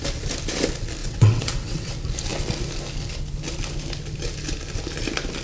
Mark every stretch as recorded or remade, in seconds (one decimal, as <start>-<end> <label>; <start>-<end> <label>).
0.0-1.0 recorded; 1.0-1.9 remade; 1.9-5.4 recorded